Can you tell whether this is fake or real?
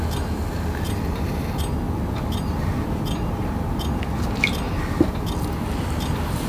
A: real